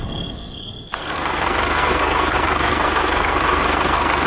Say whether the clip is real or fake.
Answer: fake